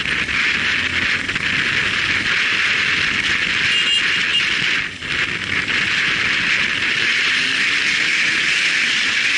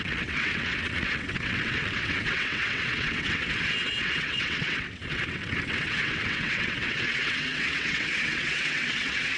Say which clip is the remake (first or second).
second